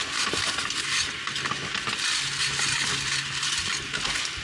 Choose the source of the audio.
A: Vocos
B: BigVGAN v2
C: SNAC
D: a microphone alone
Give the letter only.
D